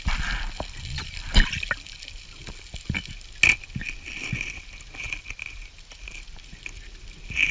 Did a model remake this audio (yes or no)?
no